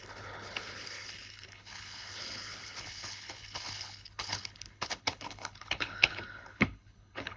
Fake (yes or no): yes